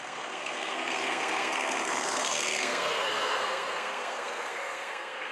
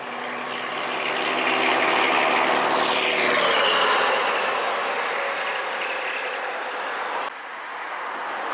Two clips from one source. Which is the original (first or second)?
second